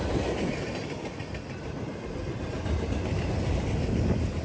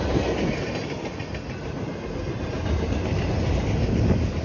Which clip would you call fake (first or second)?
first